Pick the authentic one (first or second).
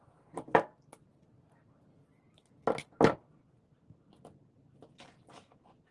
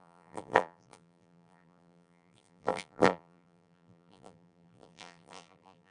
first